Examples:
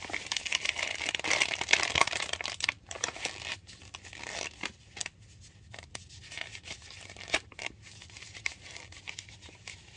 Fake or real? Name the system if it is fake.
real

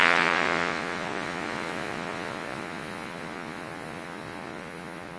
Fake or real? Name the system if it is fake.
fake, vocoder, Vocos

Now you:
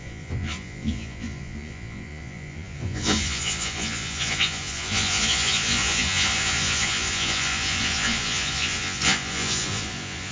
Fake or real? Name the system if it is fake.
fake, vocoder, Vocos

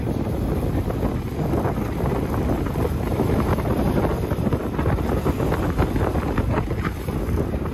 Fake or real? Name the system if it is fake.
real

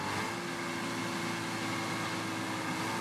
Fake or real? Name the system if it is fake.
real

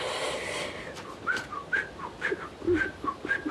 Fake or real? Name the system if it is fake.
real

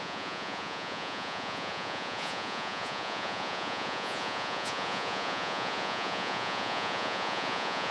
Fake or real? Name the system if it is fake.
fake, vocoder, Vocos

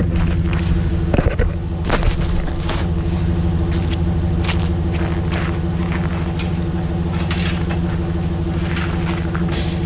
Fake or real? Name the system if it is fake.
real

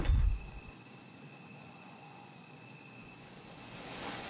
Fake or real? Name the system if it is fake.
fake, vocoder, Vocos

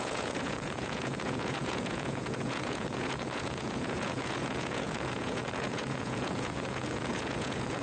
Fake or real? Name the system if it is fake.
fake, vocoder, Vocos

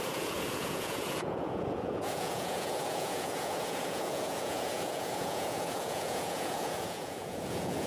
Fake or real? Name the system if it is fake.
fake, vocoder, Vocos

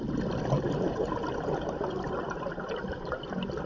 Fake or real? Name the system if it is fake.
real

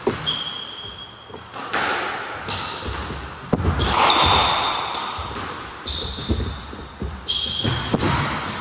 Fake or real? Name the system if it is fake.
real